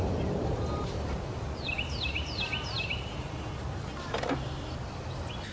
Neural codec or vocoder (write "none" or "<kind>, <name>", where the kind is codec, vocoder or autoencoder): none